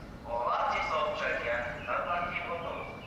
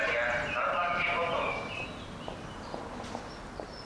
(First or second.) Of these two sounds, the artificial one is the first